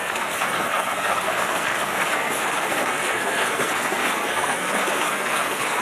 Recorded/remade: remade